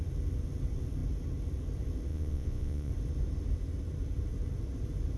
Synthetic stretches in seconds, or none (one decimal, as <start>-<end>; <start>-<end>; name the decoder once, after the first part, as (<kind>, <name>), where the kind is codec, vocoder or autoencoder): 2.1-2.9 (vocoder, Vocos)